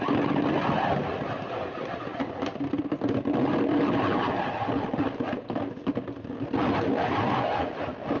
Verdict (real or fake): real